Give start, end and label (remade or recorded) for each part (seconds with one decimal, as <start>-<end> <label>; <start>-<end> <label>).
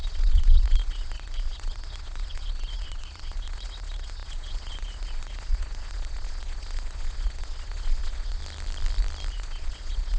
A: 0.0-8.4 remade; 8.4-9.3 recorded; 9.3-10.2 remade